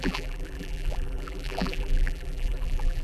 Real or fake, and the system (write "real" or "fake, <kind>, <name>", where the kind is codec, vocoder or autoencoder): fake, vocoder, BigVGAN v2